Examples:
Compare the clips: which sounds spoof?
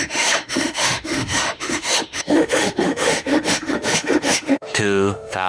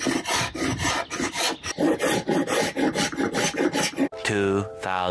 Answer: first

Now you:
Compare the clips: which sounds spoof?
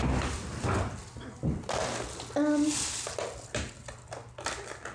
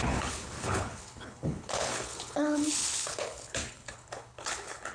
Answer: second